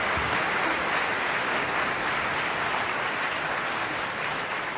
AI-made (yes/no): no